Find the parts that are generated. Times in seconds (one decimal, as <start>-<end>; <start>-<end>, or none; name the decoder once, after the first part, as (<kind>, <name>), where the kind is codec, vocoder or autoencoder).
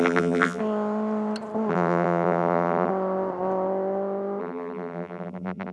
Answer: 0.0-0.6 (vocoder, BigVGAN v2); 1.7-2.9; 4.4-5.7